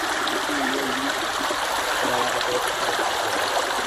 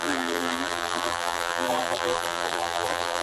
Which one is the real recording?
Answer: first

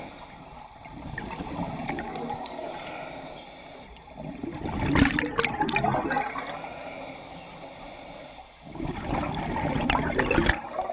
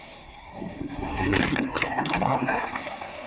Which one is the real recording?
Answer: first